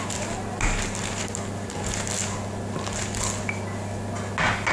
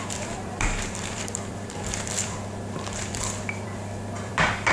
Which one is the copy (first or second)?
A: second